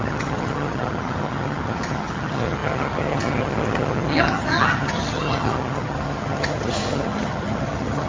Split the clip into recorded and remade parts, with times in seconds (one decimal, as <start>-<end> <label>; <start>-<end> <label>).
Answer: 0.0-8.1 remade